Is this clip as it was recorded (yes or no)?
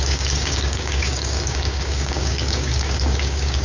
no